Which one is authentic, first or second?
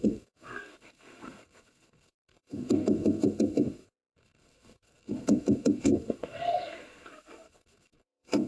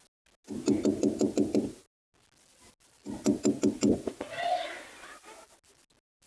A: second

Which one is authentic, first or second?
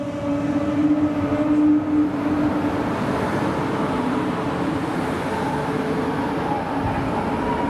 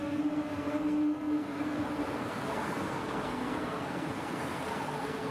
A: first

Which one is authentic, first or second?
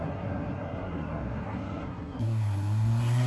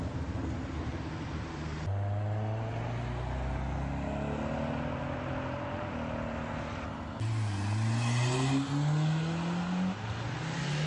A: second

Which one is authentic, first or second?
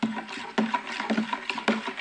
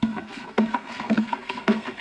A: first